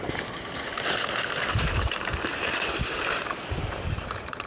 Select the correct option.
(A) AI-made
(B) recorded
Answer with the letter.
A